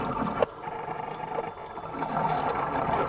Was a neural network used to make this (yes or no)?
no